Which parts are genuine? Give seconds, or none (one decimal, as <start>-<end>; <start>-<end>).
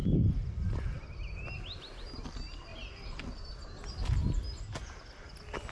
0.0-5.7